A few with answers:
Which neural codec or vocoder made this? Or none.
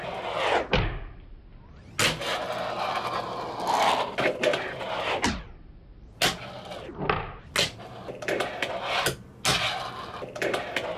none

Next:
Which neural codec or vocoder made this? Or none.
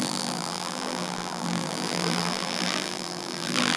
vocoder, BigVGAN v2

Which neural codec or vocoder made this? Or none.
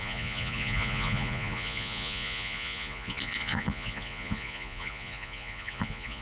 vocoder, Vocos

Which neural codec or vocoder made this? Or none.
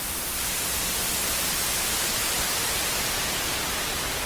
none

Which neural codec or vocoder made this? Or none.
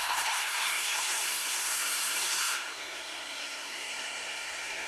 codec, SNAC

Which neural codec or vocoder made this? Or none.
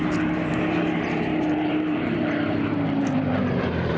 vocoder, BigVGAN v2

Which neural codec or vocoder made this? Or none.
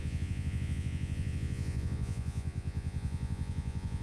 vocoder, Vocos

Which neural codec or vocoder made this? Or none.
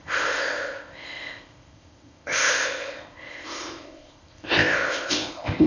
codec, ZipCodec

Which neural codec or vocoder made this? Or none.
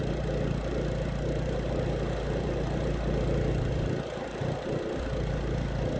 none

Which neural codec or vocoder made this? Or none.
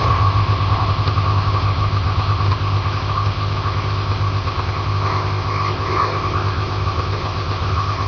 codec, ZipCodec